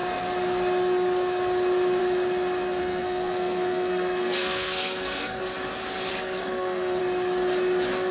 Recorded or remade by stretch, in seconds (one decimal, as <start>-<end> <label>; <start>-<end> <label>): 0.0-2.8 recorded; 2.8-5.4 remade; 5.4-6.1 recorded; 6.1-7.0 remade; 7.0-8.1 recorded

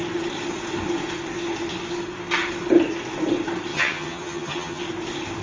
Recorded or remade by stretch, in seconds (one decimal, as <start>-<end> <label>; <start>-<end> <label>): 0.0-3.7 recorded; 3.7-4.8 remade; 4.8-5.4 recorded